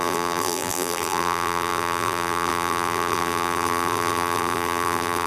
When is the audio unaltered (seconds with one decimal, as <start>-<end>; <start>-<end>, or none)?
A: none